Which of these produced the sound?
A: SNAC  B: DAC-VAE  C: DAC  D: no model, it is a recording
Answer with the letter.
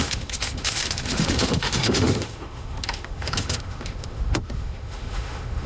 B